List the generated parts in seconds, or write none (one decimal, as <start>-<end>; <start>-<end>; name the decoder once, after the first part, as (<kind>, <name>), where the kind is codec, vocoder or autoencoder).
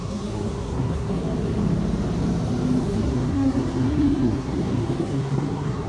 0.0-1.2 (codec, SNAC); 2.8-5.9